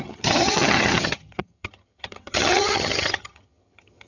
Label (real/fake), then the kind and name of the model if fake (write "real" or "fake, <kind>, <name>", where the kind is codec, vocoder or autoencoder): fake, vocoder, HiFi-GAN